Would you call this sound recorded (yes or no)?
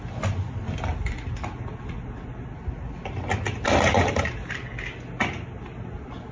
yes